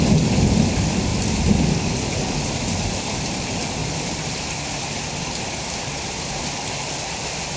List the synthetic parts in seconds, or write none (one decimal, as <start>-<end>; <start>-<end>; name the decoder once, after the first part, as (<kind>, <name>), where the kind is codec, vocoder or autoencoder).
none